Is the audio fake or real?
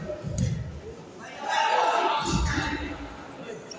real